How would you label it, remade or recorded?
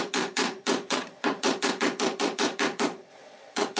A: remade